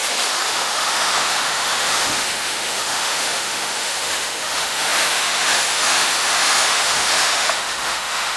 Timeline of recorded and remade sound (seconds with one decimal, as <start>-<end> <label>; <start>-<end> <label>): 0.0-0.5 recorded; 0.5-8.4 remade